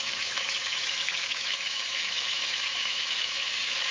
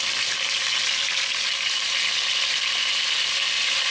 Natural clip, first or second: second